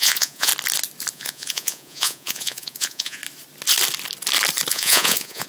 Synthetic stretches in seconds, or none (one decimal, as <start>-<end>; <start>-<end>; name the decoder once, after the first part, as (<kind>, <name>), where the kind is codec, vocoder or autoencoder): 0.0-0.5 (vocoder, Vocos); 1.1-3.2; 4.7-5.5